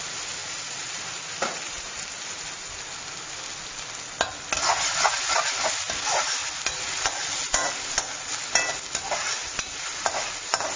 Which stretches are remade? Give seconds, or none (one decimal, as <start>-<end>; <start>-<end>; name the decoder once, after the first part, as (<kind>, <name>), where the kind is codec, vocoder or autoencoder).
0.4-2.0 (vocoder, BigVGAN v2); 9.4-10.1